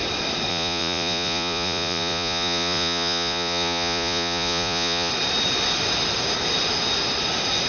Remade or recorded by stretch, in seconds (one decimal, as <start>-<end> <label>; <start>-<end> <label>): 0.0-0.5 recorded; 0.5-5.1 remade; 5.1-7.7 recorded